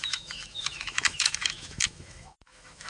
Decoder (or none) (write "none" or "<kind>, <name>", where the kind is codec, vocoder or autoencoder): autoencoder, DAC-VAE